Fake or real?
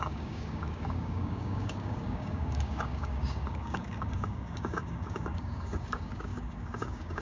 fake